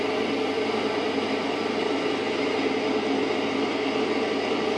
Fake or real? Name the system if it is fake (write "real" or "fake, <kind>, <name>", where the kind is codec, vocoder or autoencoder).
real